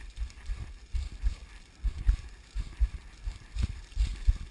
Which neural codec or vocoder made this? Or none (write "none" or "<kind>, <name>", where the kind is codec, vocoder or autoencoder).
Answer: none